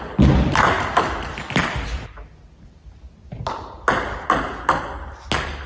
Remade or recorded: recorded